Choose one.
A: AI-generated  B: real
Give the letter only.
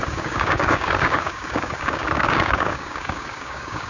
A